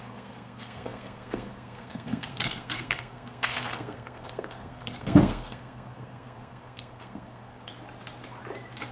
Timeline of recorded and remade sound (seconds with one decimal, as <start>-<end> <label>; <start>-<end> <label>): 0.0-7.7 remade; 7.7-8.9 recorded